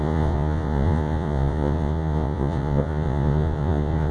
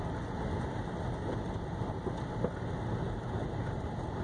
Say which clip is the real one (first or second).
second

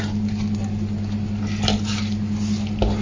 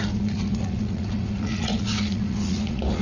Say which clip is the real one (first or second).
first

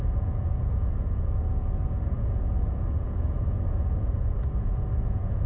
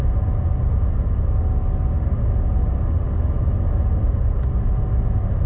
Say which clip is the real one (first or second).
second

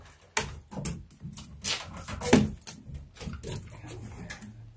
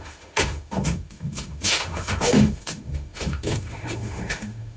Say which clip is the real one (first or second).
first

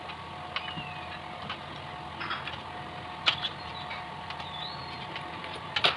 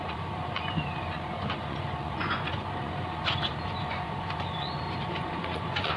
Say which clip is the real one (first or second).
first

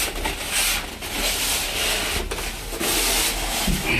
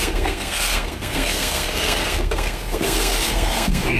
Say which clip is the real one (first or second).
first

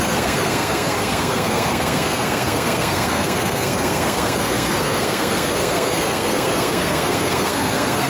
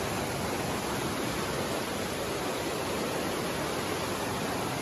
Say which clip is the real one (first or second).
second